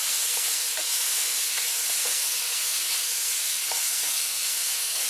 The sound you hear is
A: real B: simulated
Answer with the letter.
B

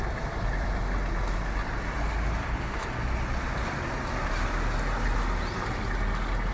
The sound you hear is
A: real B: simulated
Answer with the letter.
A